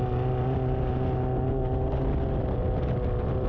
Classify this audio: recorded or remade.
recorded